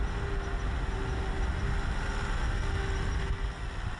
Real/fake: real